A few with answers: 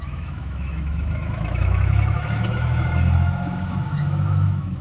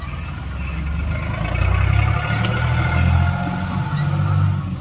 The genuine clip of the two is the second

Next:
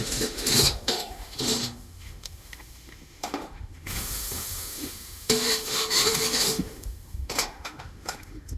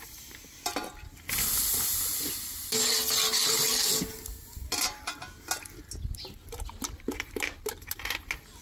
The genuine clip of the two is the second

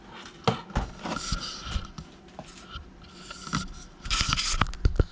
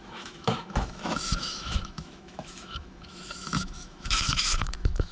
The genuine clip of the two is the first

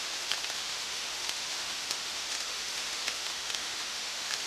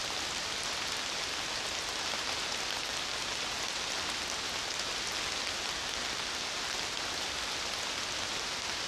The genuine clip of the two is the second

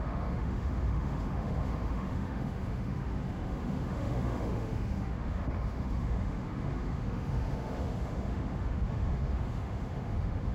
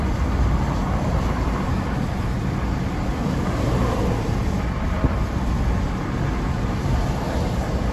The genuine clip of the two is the second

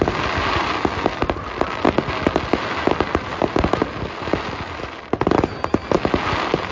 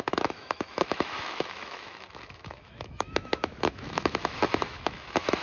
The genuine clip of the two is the first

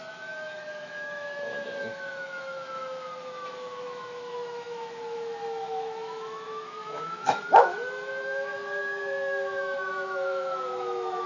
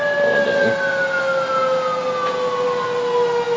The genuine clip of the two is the second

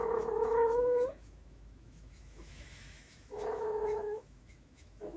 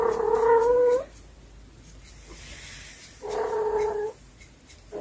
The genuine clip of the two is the second